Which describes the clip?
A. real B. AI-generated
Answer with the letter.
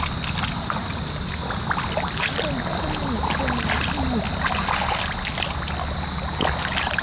A